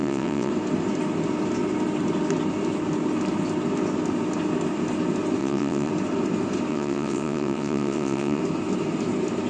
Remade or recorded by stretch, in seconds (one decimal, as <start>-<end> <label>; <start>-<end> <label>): 0.0-0.5 remade; 0.5-5.4 recorded; 5.4-5.9 remade; 5.9-6.7 recorded; 6.7-8.4 remade; 8.4-9.5 recorded